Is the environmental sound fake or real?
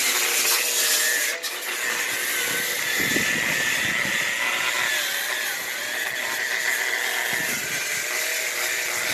real